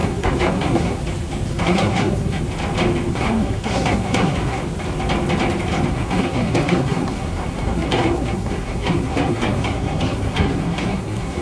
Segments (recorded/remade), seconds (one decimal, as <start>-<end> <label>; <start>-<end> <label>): 0.0-1.0 remade; 1.0-1.5 recorded; 1.5-2.4 remade; 2.4-3.1 recorded; 3.1-4.6 remade; 4.6-5.9 recorded; 5.9-11.4 remade